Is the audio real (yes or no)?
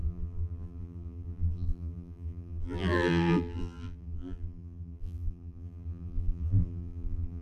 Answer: no